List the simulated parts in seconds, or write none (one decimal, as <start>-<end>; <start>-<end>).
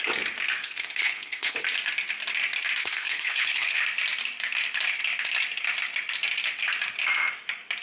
0.6-1.6; 2.8-3.8